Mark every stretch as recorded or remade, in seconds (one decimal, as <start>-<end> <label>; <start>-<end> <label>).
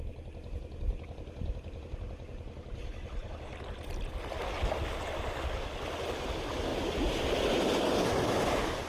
0.0-8.9 recorded